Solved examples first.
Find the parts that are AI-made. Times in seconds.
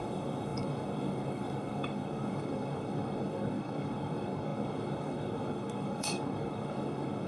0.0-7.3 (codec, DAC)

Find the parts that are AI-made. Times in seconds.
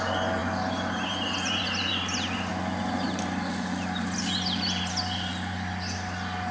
none